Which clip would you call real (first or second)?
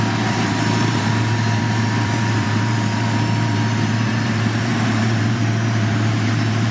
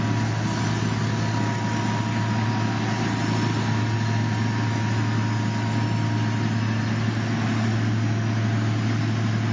second